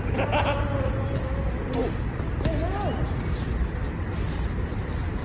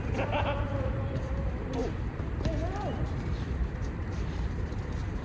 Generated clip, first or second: second